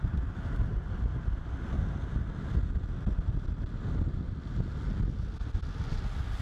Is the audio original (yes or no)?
yes